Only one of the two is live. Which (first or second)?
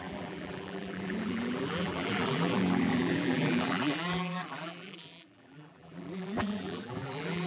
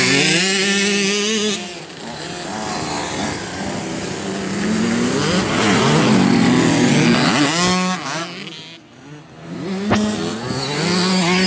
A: second